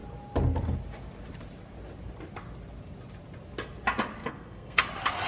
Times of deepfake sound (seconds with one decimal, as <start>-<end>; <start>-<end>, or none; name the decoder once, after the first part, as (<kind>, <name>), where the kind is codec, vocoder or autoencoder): 4.2-4.8 (codec, SNAC)